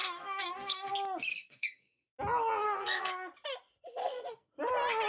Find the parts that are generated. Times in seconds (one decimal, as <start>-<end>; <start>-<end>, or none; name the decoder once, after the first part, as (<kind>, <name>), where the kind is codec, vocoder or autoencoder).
0.0-0.9 (codec, SNAC); 1.3-2.2; 2.6-3.1; 4.0-4.5